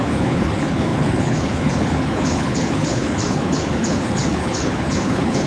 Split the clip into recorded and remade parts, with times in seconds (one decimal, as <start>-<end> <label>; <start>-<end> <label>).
0.0-5.5 remade